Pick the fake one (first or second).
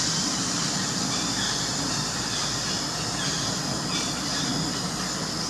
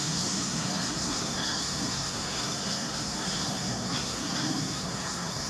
second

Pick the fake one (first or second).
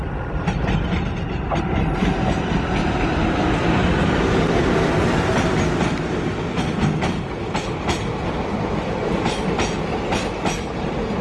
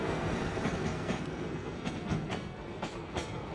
second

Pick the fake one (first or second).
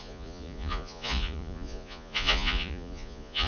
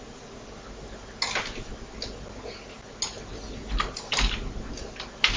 first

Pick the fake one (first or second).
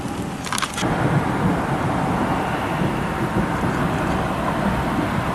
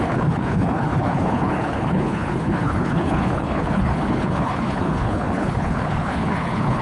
second